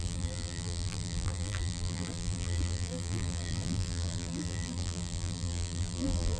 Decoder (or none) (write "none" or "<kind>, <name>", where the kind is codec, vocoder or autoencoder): vocoder, BigVGAN v2